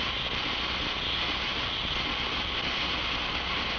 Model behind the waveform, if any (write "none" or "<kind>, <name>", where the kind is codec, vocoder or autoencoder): none